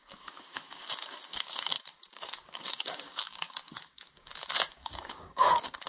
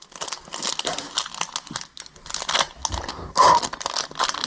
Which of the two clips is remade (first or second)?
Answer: first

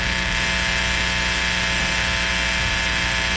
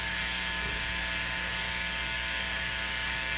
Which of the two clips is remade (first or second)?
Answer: second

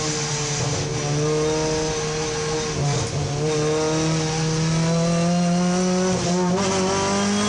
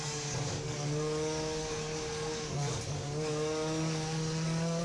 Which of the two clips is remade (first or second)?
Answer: second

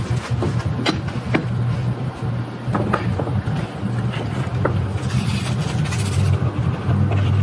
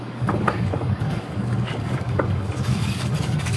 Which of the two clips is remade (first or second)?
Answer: second